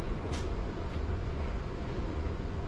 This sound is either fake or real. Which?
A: fake